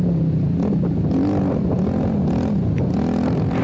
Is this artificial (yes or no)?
no